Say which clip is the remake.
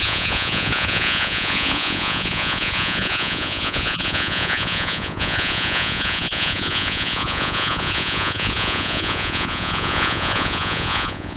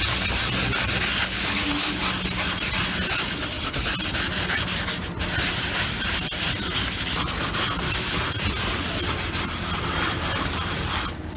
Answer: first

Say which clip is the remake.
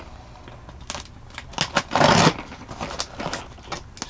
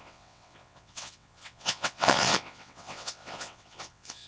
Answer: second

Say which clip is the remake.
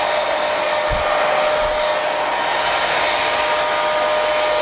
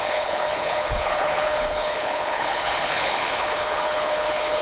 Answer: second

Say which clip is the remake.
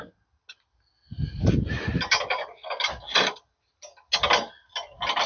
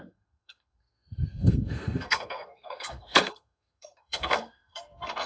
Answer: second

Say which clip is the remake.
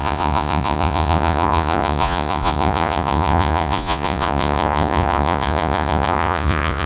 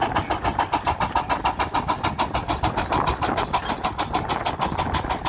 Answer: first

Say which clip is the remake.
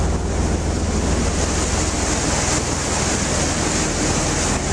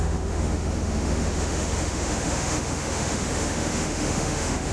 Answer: second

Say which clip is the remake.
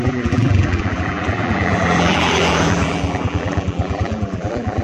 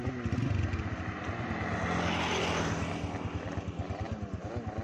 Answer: first